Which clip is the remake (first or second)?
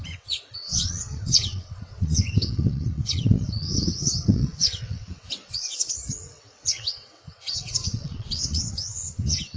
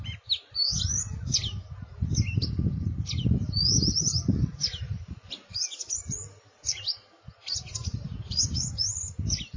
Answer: first